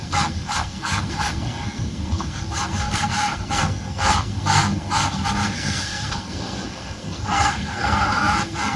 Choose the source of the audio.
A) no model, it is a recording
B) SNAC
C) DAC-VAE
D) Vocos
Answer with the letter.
B